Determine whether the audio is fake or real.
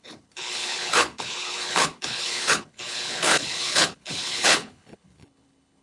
fake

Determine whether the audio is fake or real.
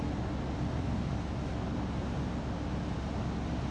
real